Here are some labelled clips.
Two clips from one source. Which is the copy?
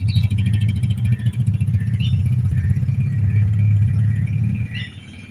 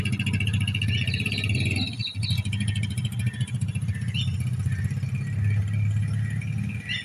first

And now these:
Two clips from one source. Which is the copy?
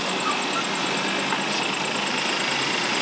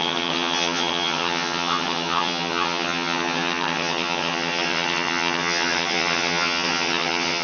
second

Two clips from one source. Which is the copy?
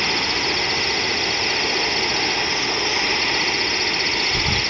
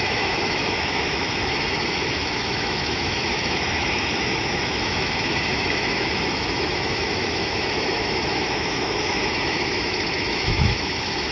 second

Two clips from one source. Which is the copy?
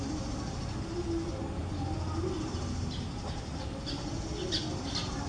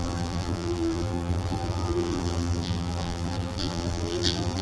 second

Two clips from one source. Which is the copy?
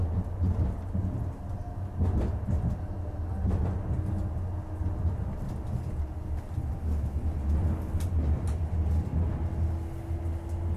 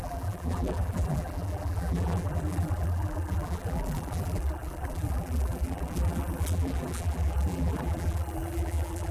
second